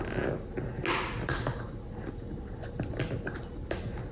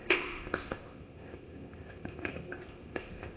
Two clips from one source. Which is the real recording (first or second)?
first